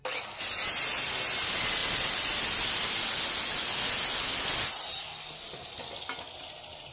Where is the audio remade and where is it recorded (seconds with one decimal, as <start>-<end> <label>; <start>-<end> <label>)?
0.0-6.9 recorded